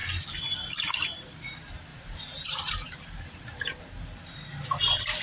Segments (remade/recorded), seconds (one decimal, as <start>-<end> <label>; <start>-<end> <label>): 0.0-1.9 recorded; 1.9-3.8 remade; 3.8-5.2 recorded